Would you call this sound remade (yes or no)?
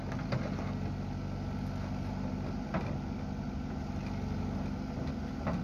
no